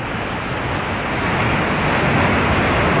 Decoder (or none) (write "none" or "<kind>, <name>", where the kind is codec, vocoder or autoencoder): none